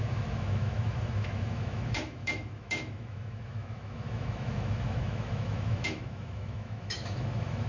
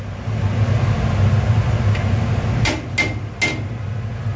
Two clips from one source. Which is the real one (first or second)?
second